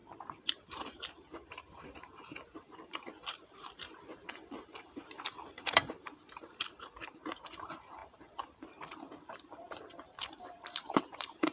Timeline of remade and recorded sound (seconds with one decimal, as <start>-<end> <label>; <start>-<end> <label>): 0.0-11.5 remade

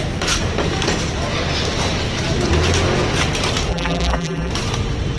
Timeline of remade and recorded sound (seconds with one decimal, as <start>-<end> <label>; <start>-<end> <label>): 0.0-3.7 recorded; 3.7-4.5 remade; 4.5-5.2 recorded

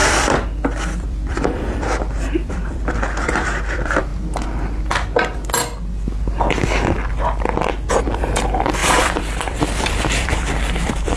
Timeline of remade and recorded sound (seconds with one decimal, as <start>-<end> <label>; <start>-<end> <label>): 0.0-4.1 remade; 4.1-7.9 recorded; 7.9-11.2 remade

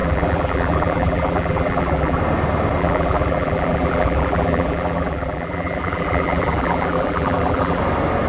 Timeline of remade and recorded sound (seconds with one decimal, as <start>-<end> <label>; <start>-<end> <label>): 0.0-2.2 remade; 2.2-2.8 recorded; 2.8-7.8 remade; 7.8-8.3 recorded

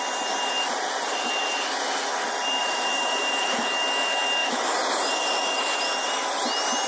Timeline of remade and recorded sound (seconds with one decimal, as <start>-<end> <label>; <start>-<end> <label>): 0.0-2.6 recorded; 2.6-3.7 remade; 3.7-4.4 recorded; 4.4-5.6 remade; 5.6-6.9 recorded

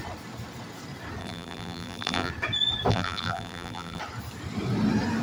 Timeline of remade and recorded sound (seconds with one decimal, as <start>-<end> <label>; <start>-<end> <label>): 0.0-1.2 recorded; 1.2-2.3 remade; 2.3-2.9 recorded; 2.9-4.0 remade; 4.0-5.2 recorded

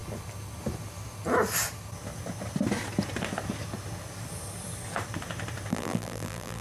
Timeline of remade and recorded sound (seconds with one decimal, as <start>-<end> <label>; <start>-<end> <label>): 0.0-5.7 recorded; 5.7-6.6 remade